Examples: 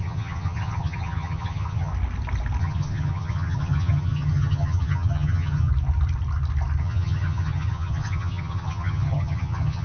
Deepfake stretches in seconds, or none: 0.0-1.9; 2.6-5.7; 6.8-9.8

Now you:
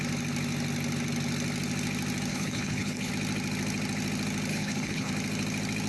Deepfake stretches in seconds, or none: 2.3-3.1; 4.5-5.1

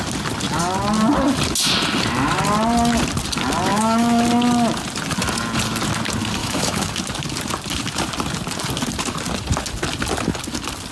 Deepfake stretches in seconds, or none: 3.7-4.2; 6.4-6.9

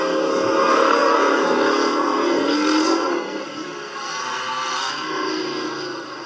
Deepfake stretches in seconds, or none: 0.0-5.4

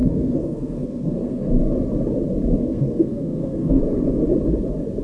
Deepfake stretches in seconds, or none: 0.0-1.6; 2.6-3.8

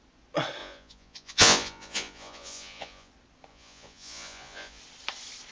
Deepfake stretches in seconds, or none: 0.6-3.1; 3.5-4.8

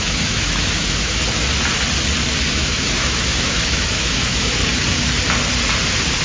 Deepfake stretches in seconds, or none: 0.0-1.2; 2.5-4.6